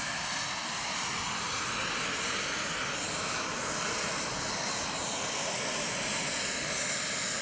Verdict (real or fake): real